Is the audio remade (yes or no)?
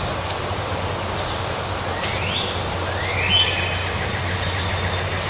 no